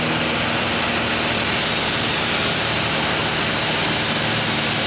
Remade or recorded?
recorded